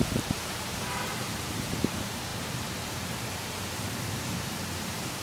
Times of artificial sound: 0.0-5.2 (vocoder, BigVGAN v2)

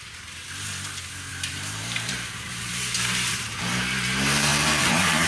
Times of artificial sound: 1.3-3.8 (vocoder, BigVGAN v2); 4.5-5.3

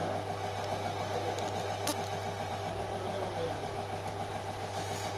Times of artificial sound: none